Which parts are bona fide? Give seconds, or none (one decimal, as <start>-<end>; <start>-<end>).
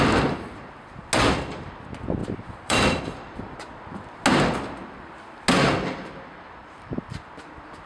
0.0-2.2; 3.0-7.9